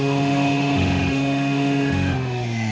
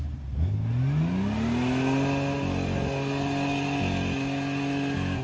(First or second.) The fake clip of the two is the first